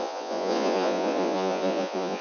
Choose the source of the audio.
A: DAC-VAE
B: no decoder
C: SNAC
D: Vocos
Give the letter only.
D